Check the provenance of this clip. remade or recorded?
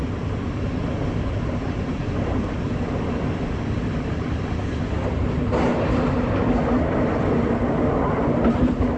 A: recorded